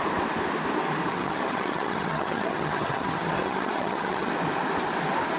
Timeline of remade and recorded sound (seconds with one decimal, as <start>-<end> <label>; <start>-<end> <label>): 0.0-1.1 recorded; 1.1-4.3 remade; 4.3-5.4 recorded